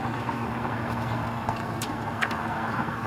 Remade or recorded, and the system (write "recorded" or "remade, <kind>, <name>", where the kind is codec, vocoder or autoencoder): remade, codec, SNAC